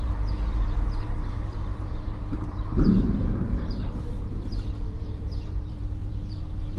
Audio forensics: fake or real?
fake